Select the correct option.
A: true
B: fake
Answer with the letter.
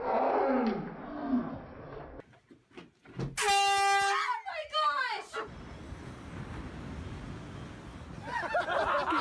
A